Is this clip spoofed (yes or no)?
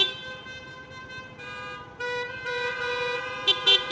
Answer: yes